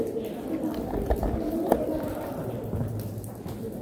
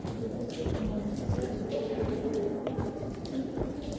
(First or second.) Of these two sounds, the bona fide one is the first